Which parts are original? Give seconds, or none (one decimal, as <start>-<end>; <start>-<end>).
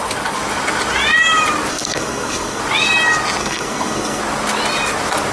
0.0-1.7; 2.6-3.4; 4.2-5.3